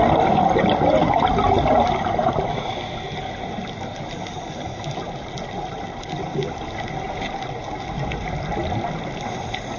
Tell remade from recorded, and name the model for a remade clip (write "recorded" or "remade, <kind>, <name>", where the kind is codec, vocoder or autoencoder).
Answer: recorded